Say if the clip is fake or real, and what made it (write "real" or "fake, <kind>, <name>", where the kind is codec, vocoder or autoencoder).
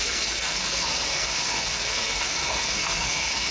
fake, codec, SNAC